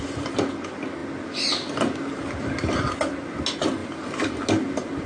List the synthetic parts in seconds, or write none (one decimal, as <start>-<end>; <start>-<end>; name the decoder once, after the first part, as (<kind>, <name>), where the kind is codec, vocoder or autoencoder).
none